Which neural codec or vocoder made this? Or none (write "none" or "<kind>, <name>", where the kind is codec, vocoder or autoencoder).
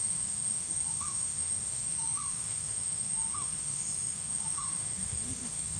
autoencoder, DAC-VAE